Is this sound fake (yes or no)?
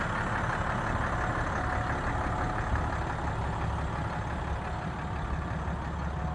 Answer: no